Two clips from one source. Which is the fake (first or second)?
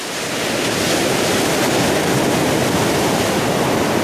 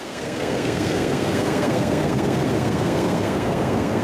second